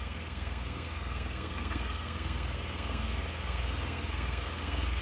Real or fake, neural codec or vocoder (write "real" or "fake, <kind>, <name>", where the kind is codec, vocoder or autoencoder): fake, codec, SNAC